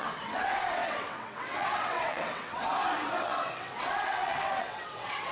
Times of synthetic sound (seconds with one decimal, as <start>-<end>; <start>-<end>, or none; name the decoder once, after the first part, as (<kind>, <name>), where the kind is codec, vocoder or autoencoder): 0.0-2.7 (vocoder, WaveNeXt); 3.2-5.3